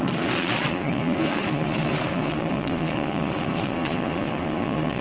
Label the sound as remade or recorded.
remade